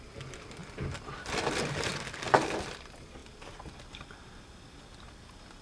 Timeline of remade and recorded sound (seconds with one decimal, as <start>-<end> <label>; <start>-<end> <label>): 0.0-5.6 recorded